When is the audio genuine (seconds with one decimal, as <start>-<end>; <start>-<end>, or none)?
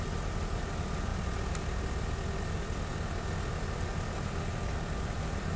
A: 0.0-5.6